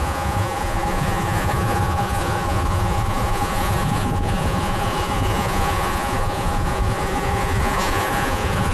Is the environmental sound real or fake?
fake